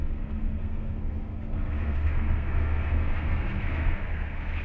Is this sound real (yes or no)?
no